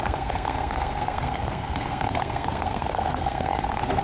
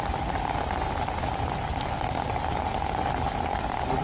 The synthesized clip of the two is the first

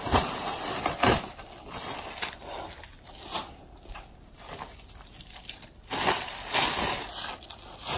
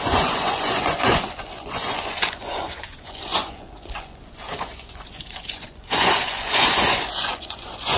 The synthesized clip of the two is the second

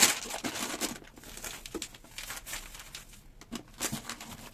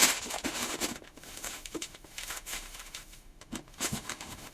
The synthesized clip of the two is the second